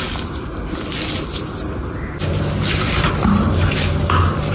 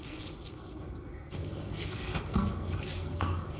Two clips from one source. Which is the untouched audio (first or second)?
first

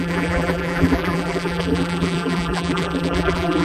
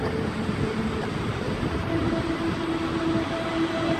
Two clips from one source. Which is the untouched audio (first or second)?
second